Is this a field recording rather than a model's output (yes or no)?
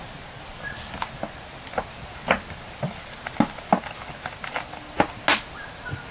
yes